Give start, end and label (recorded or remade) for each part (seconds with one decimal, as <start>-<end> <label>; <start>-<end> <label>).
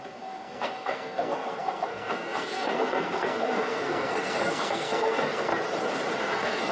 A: 0.0-5.5 remade; 5.5-6.2 recorded; 6.2-6.7 remade